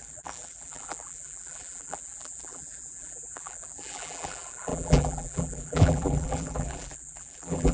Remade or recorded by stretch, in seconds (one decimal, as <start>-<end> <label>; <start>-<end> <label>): 0.0-7.7 remade